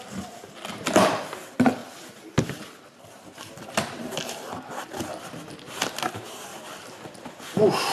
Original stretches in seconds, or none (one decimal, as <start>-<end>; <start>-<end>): 0.0-1.8; 5.7-6.5; 7.3-7.9

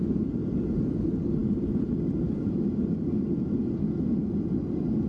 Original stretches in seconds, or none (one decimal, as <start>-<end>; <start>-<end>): 0.0-5.1

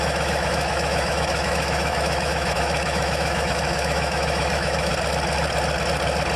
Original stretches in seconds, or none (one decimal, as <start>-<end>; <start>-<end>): 4.9-6.4

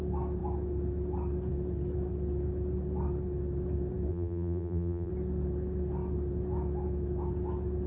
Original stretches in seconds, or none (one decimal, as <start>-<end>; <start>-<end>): 0.0-4.1; 5.1-7.9

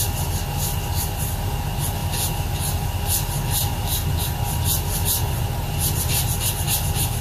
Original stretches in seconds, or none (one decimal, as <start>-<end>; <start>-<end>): 0.0-7.2

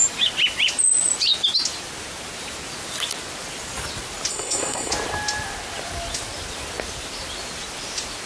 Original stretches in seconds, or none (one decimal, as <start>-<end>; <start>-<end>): 0.0-4.3; 4.9-8.3

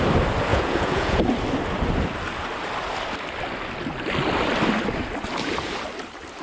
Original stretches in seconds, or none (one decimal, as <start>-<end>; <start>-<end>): 0.0-0.5; 1.2-6.4